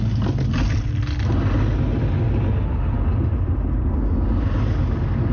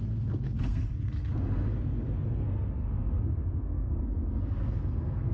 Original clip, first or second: first